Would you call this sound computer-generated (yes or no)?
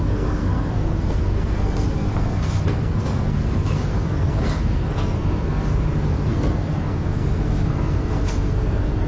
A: yes